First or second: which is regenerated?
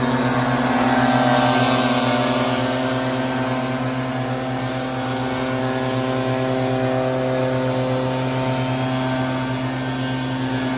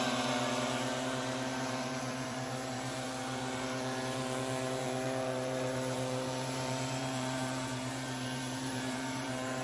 second